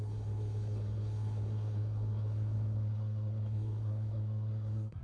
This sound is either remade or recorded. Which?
remade